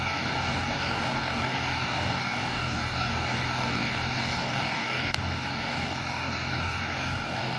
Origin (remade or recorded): remade